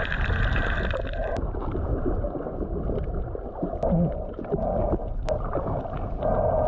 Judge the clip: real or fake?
real